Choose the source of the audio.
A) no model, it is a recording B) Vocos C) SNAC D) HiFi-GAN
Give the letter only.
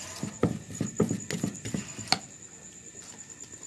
A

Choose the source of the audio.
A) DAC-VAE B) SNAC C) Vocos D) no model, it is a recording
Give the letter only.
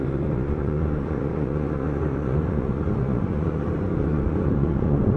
C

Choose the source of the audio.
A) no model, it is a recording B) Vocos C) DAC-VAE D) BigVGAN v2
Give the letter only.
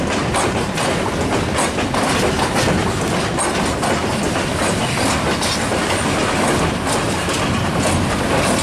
A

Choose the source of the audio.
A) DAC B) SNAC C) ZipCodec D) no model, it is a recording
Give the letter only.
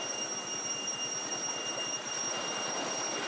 D